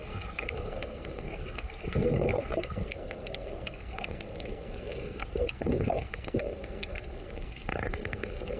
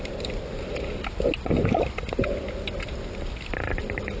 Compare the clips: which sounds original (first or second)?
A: second